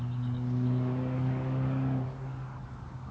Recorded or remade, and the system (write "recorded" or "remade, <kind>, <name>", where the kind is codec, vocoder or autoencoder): remade, codec, DAC